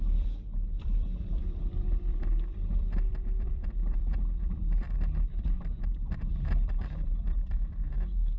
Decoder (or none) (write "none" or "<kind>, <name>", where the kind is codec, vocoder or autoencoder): vocoder, BigVGAN v2